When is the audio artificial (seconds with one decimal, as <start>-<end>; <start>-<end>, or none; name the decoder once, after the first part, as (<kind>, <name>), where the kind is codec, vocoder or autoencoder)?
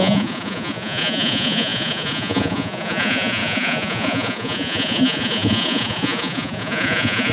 0.0-7.3 (vocoder, Vocos)